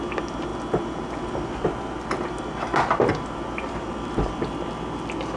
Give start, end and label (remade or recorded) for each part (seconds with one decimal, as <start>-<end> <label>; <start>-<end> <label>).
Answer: 0.0-5.4 recorded